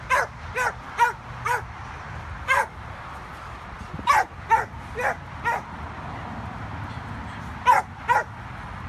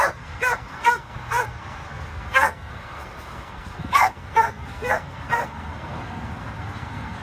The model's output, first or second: second